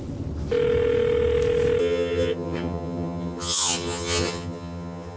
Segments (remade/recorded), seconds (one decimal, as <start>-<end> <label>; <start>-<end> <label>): 0.0-1.8 recorded; 1.8-5.2 remade